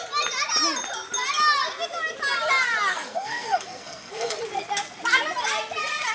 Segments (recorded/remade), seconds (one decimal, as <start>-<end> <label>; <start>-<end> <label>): 0.0-2.9 recorded; 2.9-4.4 remade; 4.4-6.1 recorded